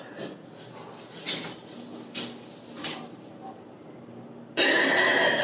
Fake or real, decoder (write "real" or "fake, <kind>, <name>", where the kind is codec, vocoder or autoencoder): real